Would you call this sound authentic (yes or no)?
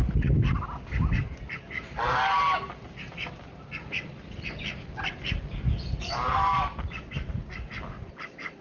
yes